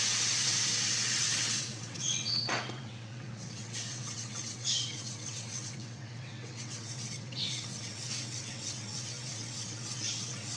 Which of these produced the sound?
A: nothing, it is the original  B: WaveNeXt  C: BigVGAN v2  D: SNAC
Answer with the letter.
B